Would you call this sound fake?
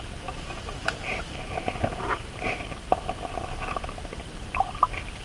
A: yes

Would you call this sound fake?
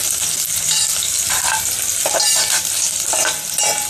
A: no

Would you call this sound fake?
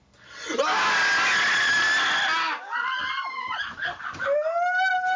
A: no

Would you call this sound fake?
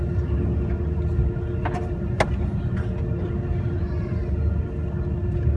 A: no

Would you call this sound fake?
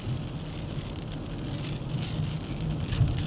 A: no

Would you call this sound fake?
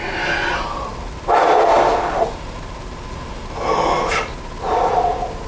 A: no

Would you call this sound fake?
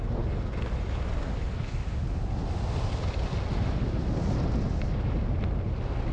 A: no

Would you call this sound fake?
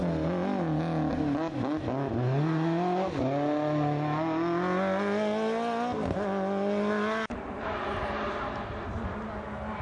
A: no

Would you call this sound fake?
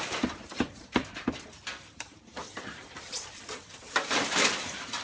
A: yes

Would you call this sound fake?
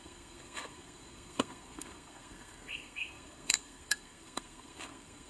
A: yes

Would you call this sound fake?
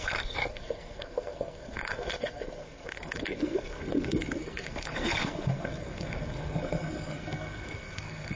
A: yes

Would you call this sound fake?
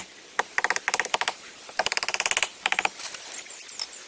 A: no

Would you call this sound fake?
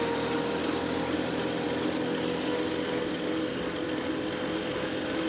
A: no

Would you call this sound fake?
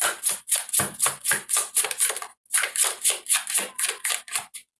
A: no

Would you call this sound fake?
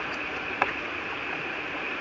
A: yes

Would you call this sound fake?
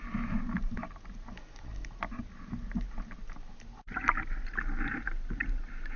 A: no